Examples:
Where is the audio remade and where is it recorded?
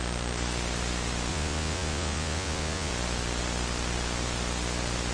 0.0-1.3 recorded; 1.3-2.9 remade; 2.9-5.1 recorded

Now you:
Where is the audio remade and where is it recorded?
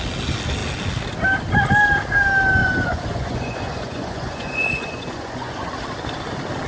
0.0-2.6 recorded; 2.6-5.7 remade; 5.7-6.7 recorded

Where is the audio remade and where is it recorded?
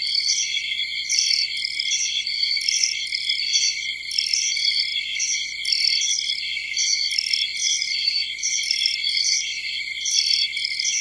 0.0-7.6 recorded; 7.6-10.1 remade; 10.1-11.0 recorded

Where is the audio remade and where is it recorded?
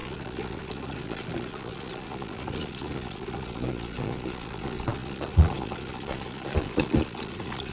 0.0-7.7 remade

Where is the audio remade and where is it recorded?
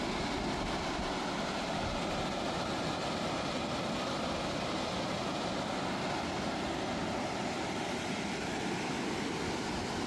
0.0-10.1 recorded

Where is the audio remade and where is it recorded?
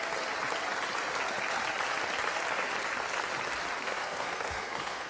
0.0-3.8 recorded; 3.8-5.1 remade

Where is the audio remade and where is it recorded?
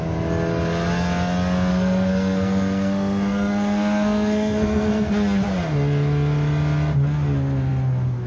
0.0-1.7 recorded; 1.7-5.1 remade; 5.1-8.3 recorded